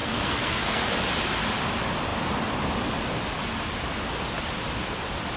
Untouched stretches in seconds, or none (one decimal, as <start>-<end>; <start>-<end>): 0.9-5.4